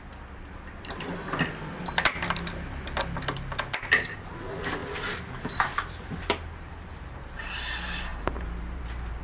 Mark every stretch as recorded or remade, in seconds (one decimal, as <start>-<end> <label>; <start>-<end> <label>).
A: 0.0-4.8 recorded; 4.8-7.5 remade; 7.5-8.1 recorded; 8.1-9.2 remade